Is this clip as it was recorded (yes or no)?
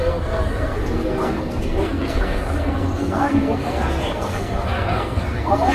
no